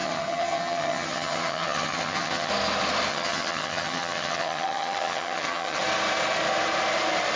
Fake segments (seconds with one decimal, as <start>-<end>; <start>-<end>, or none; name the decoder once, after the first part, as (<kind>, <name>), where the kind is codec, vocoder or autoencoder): 0.0-2.5 (vocoder, HiFi-GAN); 3.1-5.8